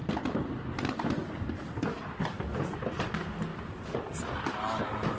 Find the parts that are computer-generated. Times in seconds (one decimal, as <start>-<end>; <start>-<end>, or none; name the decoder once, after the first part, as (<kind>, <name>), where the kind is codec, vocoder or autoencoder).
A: none